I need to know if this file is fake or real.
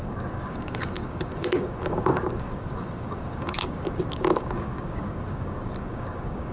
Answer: fake